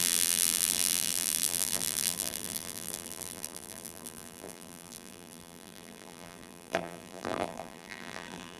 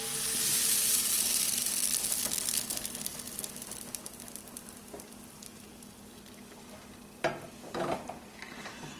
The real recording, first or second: second